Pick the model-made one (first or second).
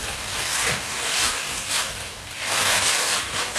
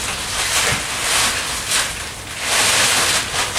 first